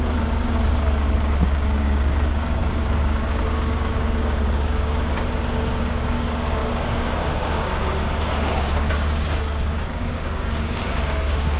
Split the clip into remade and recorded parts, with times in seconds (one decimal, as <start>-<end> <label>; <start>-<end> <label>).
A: 0.0-11.6 remade